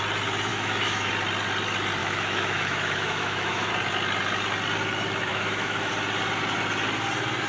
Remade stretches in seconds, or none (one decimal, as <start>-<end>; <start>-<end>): 0.5-1.1; 2.0-3.7; 5.3-5.9